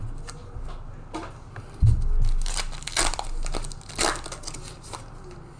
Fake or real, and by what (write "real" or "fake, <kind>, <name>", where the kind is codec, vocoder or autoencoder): real